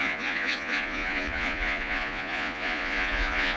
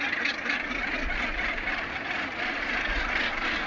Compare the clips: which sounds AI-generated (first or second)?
first